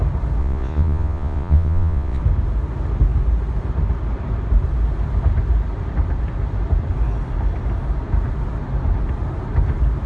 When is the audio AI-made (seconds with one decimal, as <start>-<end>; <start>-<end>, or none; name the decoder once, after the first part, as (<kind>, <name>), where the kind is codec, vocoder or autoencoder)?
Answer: 0.4-2.2 (vocoder, Vocos)